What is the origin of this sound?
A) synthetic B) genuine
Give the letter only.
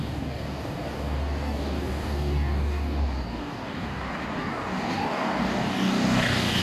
A